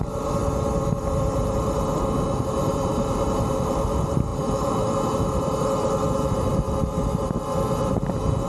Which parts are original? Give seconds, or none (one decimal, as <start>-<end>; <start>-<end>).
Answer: 0.4-2.0